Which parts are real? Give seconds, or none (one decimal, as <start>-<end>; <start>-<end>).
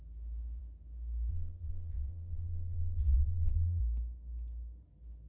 0.0-1.3; 3.8-5.3